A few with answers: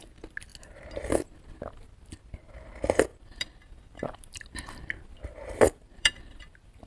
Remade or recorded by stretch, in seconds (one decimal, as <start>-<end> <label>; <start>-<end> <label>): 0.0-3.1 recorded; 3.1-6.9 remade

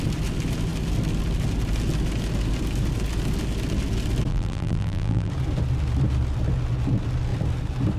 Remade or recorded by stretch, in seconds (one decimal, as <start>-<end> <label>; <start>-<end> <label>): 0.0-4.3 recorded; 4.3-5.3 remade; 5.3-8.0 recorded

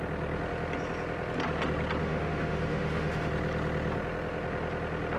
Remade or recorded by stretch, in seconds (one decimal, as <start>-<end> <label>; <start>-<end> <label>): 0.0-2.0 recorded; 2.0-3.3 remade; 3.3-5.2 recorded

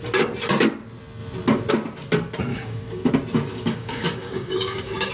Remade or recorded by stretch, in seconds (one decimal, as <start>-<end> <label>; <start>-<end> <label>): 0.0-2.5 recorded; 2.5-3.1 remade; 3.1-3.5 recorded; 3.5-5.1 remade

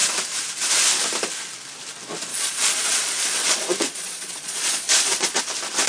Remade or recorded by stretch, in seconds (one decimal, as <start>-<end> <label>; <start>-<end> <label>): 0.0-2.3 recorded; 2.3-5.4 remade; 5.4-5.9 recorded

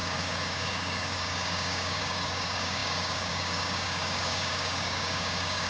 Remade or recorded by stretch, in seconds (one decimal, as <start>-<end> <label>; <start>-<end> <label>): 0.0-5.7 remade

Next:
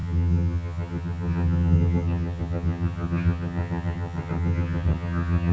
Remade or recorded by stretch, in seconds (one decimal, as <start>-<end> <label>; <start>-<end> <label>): 0.0-5.5 remade

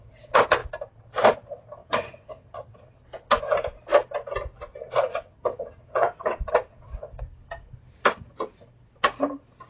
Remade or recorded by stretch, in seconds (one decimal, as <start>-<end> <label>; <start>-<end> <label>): 0.0-1.8 recorded; 1.8-3.0 remade; 3.0-5.1 recorded; 5.1-7.2 remade; 7.2-9.7 recorded